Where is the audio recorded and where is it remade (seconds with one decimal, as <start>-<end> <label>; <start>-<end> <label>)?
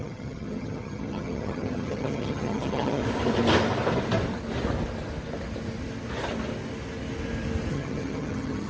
0.0-3.0 remade; 3.0-7.7 recorded; 7.7-8.7 remade